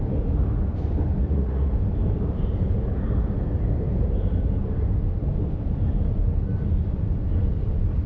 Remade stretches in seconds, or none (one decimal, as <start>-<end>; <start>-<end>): 1.2-1.7